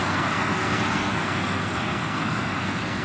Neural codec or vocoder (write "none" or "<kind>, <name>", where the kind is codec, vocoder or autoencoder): codec, SNAC